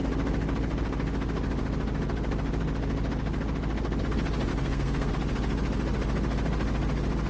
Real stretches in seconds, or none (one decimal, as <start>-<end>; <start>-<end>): 0.0-4.5; 5.1-7.3